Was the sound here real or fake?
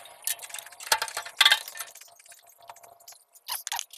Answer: real